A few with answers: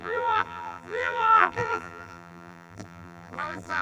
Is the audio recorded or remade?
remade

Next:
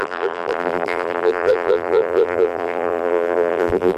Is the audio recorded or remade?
remade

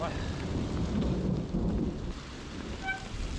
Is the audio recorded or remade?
recorded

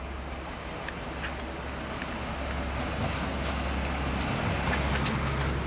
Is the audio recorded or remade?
recorded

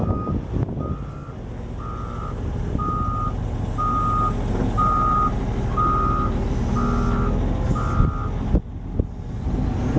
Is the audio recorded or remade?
recorded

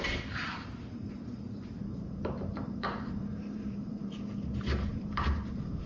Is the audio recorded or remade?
remade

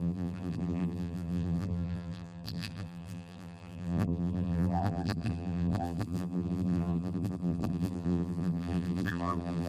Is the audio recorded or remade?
remade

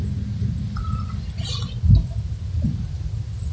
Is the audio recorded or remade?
recorded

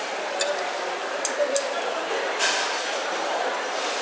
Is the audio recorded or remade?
remade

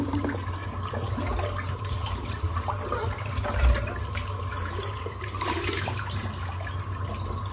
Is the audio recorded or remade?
remade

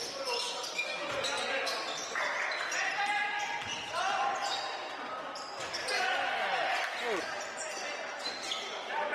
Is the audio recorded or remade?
recorded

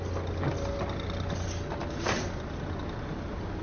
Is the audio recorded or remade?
recorded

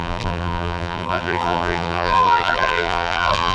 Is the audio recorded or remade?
remade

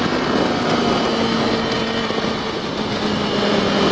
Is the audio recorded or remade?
recorded